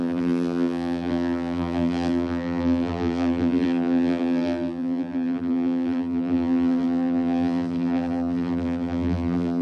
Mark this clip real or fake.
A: fake